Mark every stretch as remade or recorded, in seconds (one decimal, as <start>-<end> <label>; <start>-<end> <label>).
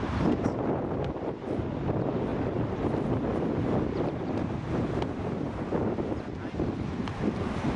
0.0-7.8 recorded